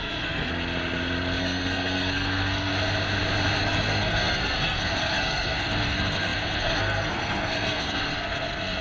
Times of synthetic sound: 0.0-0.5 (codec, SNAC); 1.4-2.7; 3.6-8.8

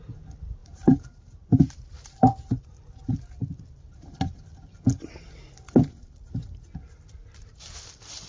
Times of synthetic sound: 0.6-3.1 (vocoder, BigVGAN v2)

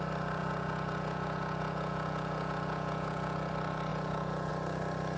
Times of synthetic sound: 0.4-3.5 (vocoder, Vocos); 3.9-4.5

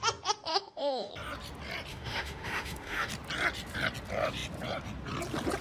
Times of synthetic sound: 0.5-1.1 (autoencoder, DAC-VAE); 1.9-3.1

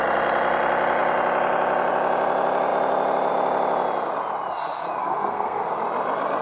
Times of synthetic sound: 5.0-5.7 (codec, SNAC)

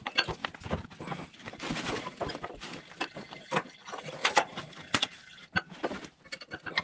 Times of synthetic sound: 0.0-0.4 (vocoder, Vocos); 4.0-5.2

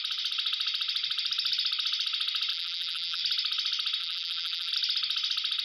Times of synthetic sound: 2.5-3.2 (vocoder, BigVGAN v2); 4.0-4.7

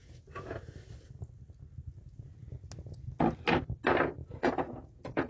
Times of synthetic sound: 0.0-0.6 (vocoder, Vocos); 4.2-5.3